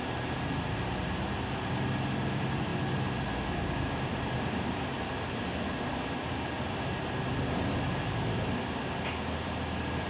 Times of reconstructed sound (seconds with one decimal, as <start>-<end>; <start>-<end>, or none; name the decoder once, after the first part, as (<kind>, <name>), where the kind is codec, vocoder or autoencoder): none